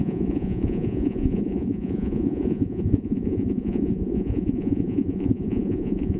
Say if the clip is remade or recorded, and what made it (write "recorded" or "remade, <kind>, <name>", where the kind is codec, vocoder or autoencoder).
remade, vocoder, Vocos